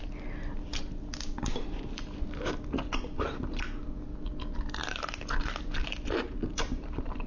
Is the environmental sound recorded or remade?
recorded